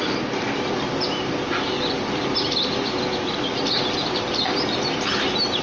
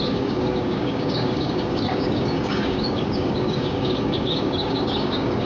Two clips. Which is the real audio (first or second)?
first